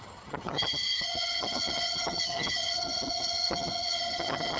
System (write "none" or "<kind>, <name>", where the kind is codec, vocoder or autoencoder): vocoder, HiFi-GAN